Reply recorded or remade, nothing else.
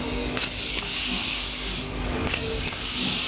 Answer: remade